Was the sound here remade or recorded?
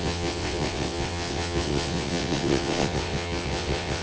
remade